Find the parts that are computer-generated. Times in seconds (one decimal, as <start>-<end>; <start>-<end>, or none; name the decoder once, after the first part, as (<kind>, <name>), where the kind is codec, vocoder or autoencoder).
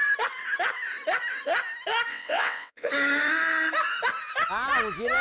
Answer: 2.1-2.9 (vocoder, WaveNeXt)